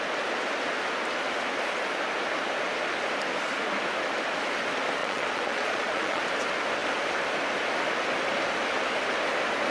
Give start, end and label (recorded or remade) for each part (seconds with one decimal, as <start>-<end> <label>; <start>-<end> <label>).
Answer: 0.0-5.0 recorded; 5.0-6.2 remade; 6.2-9.7 recorded